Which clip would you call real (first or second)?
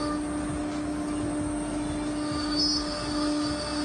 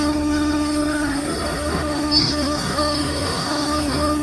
first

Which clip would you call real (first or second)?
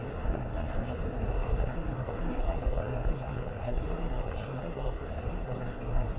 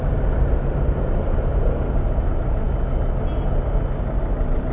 second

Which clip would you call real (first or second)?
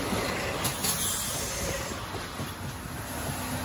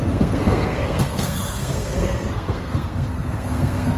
first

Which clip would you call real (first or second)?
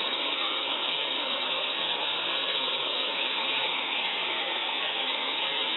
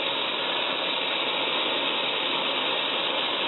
second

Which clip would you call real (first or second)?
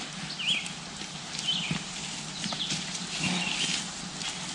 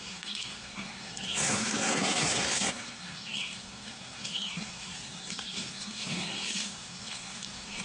first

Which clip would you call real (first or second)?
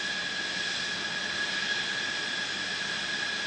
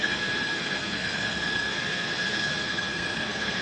first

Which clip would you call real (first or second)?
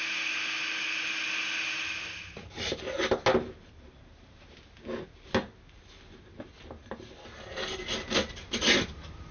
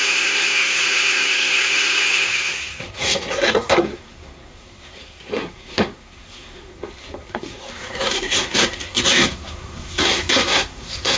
first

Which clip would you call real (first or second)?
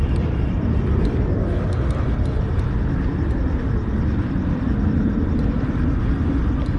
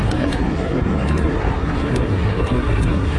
first